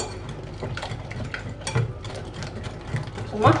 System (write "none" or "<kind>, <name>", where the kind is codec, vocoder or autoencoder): none